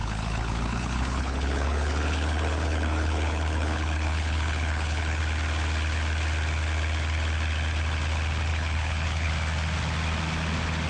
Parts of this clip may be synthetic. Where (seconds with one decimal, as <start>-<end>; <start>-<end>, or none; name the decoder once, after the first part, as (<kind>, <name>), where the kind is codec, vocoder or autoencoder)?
0.0-5.2 (codec, HILCodec); 8.5-9.3